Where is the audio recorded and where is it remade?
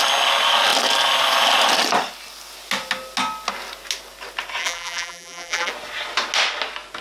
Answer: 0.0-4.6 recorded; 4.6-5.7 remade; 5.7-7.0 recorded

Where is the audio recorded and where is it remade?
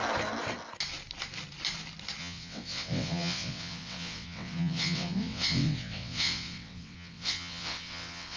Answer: 0.0-2.2 recorded; 2.2-8.4 remade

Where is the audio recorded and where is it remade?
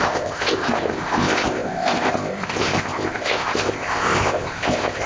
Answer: 0.0-5.1 remade